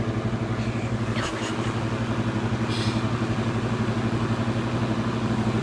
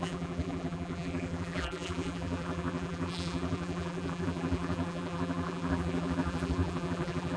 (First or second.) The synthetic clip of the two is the second